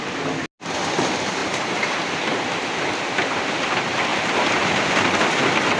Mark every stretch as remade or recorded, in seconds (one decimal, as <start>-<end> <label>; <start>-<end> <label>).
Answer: 0.0-1.4 recorded; 1.4-2.0 remade; 2.0-4.1 recorded; 4.1-4.8 remade; 4.8-5.8 recorded